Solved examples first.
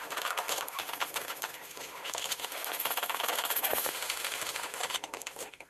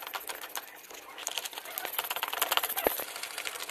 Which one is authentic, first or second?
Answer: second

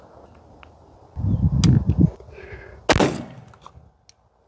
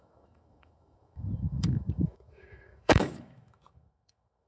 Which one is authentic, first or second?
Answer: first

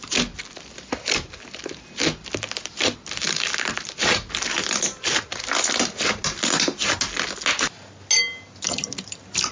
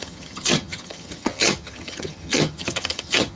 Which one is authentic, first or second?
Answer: first